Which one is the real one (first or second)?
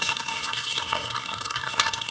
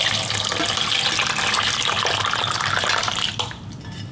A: second